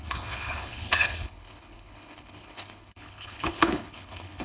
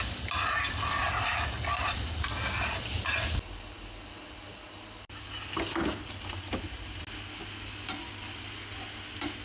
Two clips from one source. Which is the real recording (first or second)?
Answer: second